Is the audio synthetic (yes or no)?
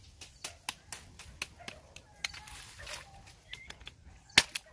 no